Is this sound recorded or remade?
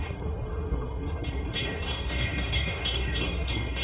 remade